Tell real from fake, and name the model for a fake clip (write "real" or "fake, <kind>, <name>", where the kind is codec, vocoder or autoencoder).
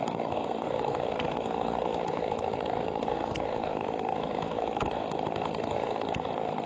fake, codec, SNAC